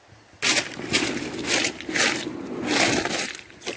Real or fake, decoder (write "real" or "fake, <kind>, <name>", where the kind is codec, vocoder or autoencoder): real